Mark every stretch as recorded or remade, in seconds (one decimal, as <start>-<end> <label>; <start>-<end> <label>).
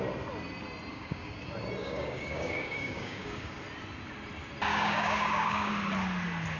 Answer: 0.0-0.9 recorded; 0.9-1.4 remade; 1.4-1.8 recorded; 1.8-3.5 remade; 3.5-4.7 recorded; 4.7-5.7 remade; 5.7-6.6 recorded